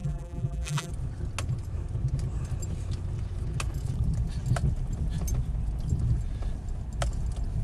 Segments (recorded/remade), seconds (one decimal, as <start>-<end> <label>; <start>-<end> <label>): 0.0-0.9 remade; 0.9-7.6 recorded